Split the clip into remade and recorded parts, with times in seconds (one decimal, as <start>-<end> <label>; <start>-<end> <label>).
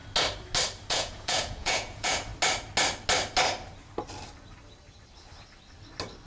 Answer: 0.0-0.9 recorded; 0.9-2.3 remade; 2.3-6.3 recorded